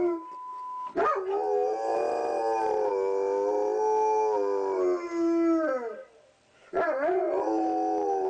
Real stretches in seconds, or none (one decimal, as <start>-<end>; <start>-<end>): 0.0-6.6; 7.3-8.3